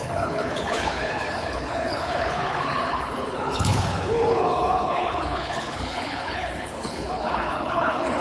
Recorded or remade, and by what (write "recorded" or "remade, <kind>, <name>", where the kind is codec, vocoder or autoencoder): remade, codec, HILCodec